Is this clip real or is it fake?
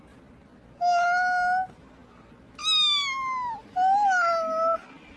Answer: real